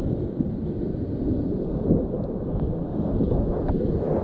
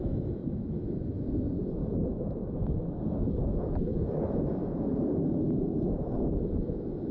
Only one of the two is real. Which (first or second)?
first